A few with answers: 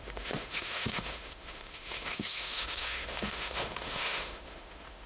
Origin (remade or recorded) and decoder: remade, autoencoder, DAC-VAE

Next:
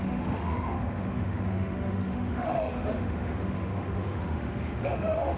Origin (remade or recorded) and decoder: remade, autoencoder, DAC-VAE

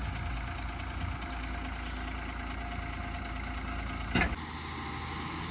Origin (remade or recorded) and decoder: recorded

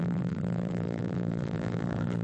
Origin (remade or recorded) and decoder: remade, vocoder, BigVGAN v2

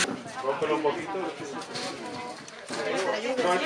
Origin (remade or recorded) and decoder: recorded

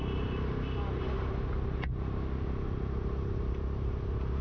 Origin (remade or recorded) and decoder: recorded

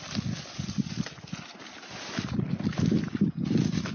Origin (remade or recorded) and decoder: recorded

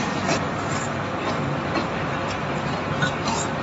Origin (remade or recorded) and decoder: recorded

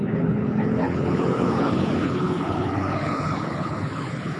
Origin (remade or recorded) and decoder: remade, codec, HILCodec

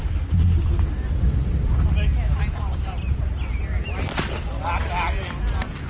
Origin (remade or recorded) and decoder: recorded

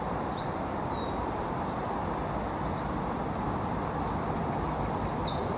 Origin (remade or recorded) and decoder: remade, vocoder, BigVGAN v2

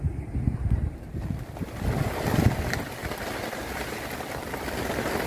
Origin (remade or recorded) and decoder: recorded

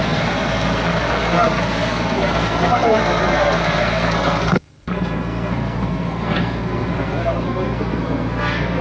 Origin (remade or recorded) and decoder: remade, codec, SNAC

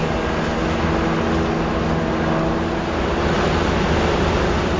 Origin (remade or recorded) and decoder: recorded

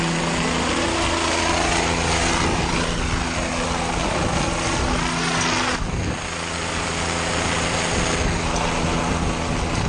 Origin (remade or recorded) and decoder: recorded